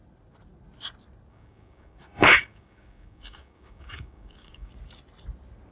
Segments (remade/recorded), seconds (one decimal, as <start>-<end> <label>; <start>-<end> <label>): 0.0-1.3 recorded; 1.3-4.7 remade; 4.7-5.7 recorded